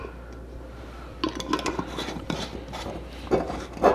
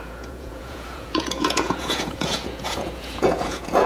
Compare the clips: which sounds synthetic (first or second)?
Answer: second